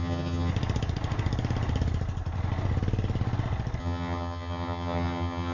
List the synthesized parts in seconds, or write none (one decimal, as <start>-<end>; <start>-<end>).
0.0-0.5; 3.8-5.5